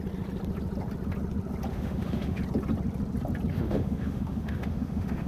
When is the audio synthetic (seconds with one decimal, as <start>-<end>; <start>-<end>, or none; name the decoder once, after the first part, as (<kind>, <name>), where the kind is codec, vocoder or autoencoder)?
1.7-2.4 (autoencoder, DAC-VAE); 3.5-5.3